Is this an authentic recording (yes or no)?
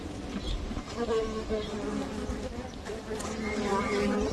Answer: yes